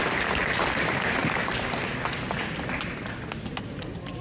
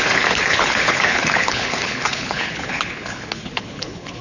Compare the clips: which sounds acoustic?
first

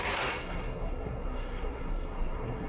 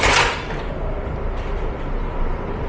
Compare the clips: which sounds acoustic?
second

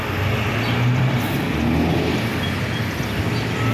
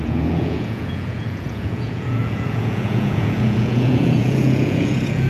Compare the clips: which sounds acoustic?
first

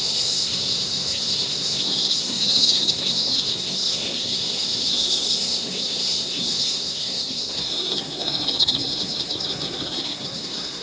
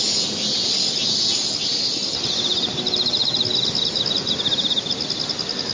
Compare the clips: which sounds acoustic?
second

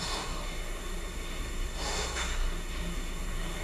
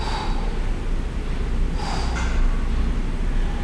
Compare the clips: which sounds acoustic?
second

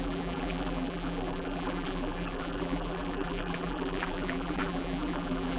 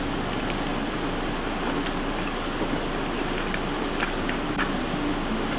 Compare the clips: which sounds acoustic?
second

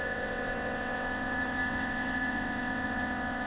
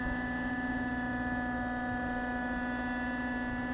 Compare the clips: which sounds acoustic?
second